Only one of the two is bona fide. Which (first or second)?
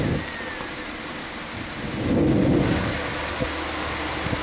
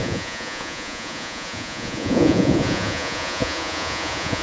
first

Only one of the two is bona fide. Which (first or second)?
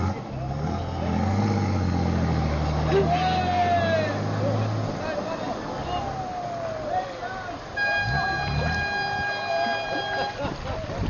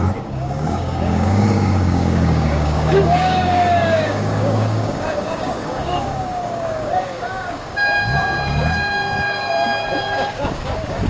first